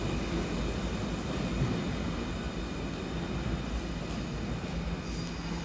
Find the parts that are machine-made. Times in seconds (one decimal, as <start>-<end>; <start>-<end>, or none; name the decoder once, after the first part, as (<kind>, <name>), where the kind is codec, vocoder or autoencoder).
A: none